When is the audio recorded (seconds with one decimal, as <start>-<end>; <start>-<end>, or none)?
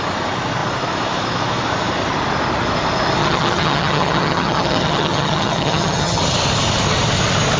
0.0-3.2; 6.2-7.6